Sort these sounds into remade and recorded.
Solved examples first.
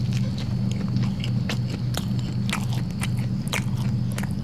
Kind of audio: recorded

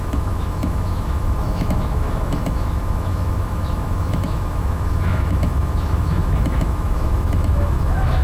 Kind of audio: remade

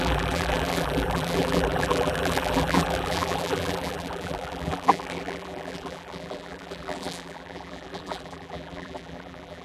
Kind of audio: remade